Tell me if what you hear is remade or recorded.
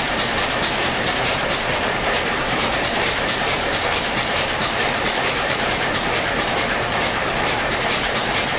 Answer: remade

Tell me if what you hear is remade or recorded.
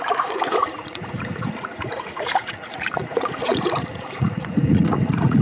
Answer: remade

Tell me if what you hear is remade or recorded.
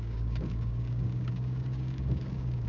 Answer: remade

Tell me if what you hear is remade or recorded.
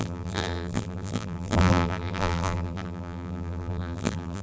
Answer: remade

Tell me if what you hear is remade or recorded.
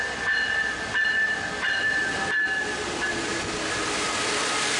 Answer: recorded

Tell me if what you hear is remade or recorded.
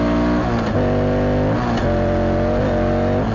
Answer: recorded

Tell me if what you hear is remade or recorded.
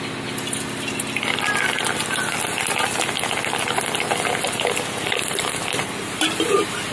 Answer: recorded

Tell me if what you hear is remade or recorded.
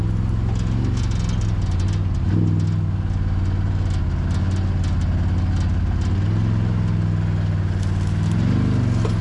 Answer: recorded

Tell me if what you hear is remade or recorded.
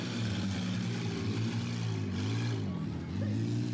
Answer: recorded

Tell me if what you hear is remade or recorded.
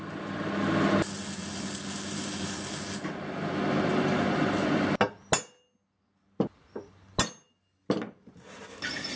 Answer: recorded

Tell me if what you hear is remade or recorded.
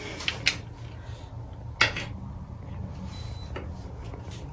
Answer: recorded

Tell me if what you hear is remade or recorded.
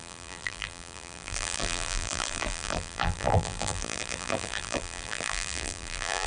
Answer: remade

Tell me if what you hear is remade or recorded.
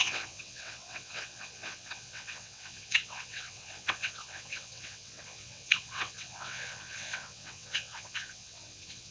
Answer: remade